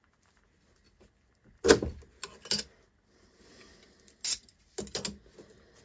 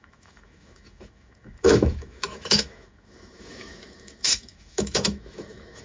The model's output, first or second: second